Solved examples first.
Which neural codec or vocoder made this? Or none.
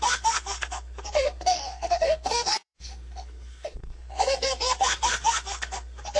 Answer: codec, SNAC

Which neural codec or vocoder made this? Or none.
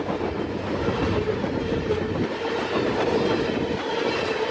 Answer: none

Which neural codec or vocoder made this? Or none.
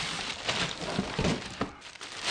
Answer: none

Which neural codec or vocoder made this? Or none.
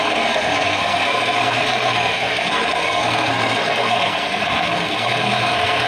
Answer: codec, SNAC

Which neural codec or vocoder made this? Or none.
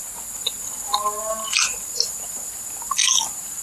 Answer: none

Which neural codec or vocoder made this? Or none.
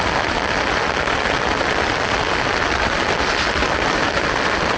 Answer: none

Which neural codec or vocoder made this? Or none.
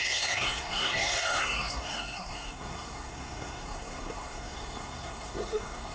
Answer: codec, SNAC